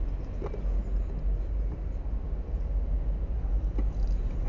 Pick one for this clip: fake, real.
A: real